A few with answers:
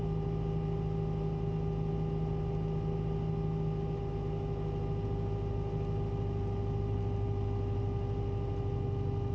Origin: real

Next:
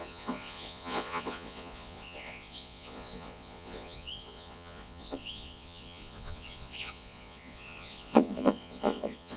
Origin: fake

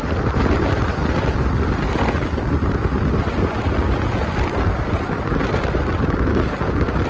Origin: real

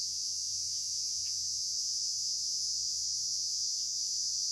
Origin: fake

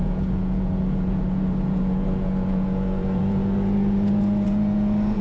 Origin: fake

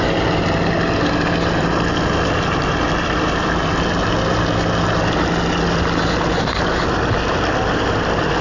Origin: real